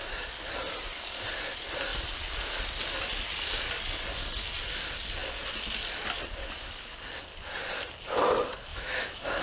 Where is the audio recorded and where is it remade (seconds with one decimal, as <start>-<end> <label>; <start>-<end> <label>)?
0.0-8.7 recorded; 8.7-9.4 remade